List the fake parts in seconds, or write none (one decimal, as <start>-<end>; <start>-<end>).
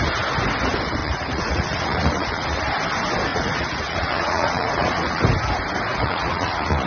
1.0-2.6; 3.3-5.2; 5.9-6.9